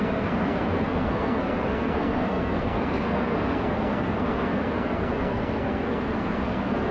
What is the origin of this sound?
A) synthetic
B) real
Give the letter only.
A